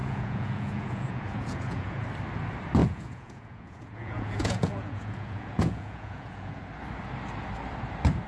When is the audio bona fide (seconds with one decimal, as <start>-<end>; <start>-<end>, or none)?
2.0-2.8; 6.6-8.3